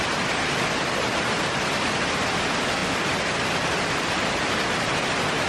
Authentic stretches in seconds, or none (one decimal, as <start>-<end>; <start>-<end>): 0.0-5.5